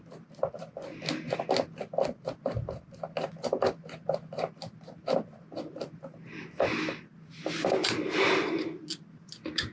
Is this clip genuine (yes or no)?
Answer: yes